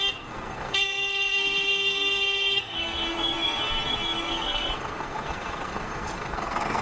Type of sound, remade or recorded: remade